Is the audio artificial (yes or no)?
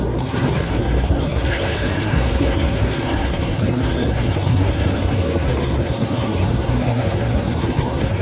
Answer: yes